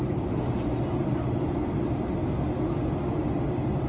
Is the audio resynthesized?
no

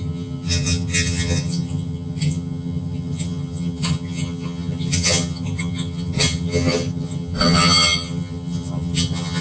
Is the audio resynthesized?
yes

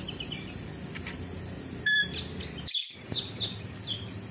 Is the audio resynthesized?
no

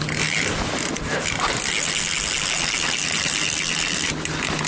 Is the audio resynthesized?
no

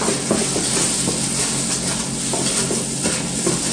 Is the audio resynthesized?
no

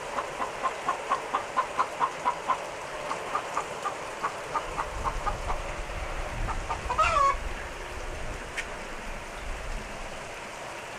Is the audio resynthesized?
yes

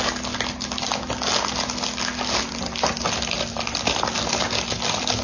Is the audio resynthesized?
no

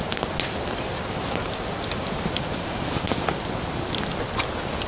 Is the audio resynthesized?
no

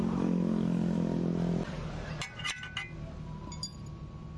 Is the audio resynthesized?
no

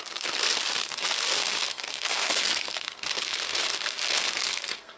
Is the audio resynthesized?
yes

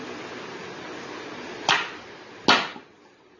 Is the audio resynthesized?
no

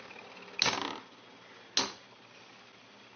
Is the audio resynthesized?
no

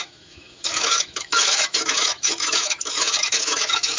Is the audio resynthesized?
yes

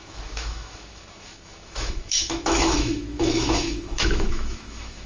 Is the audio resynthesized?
yes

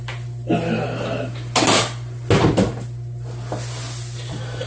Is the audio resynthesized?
no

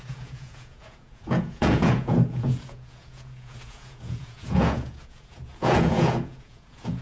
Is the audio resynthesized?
yes